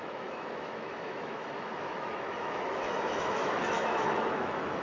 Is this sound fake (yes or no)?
yes